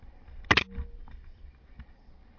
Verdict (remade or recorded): recorded